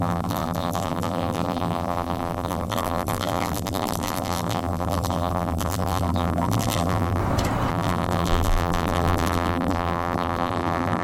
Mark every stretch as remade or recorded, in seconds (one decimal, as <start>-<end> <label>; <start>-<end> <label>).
0.0-7.2 remade; 7.2-7.7 recorded; 7.7-11.0 remade